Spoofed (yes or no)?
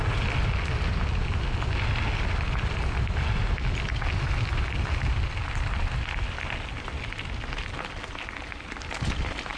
no